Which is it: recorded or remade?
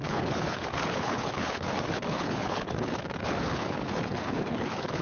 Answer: remade